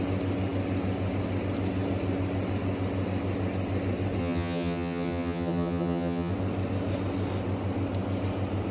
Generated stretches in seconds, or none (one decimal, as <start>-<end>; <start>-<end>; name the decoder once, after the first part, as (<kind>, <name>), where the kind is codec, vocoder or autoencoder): 4.2-6.3 (vocoder, HiFi-GAN)